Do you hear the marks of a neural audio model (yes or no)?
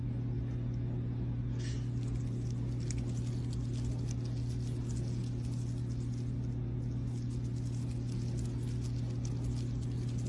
no